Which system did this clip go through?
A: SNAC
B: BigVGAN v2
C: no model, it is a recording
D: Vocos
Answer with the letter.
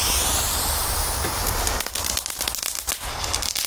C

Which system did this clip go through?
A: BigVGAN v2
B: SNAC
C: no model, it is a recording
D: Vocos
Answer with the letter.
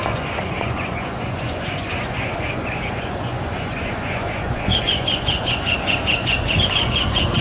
D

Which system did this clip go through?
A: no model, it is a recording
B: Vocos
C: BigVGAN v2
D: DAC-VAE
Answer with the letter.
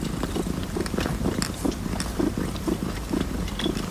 A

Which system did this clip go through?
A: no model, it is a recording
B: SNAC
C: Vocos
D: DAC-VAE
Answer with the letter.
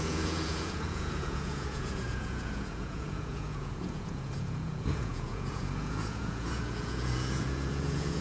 C